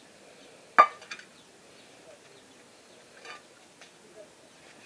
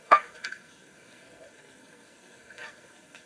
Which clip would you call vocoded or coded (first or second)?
second